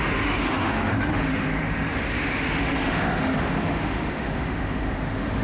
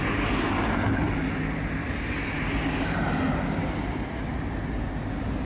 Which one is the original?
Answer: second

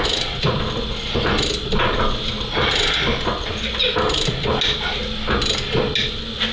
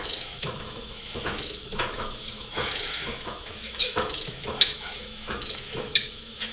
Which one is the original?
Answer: first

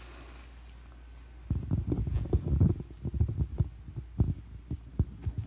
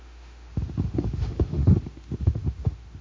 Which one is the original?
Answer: first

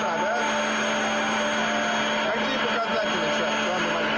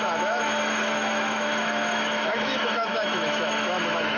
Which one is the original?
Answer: first